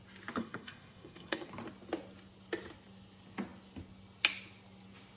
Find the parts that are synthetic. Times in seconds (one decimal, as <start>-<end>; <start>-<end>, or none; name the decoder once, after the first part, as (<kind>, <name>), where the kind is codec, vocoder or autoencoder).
0.4-1.5 (codec, SNAC)